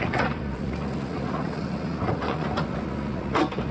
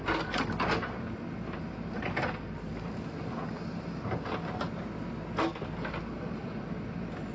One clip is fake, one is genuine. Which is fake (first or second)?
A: first